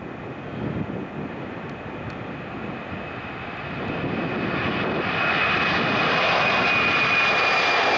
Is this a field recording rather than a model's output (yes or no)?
yes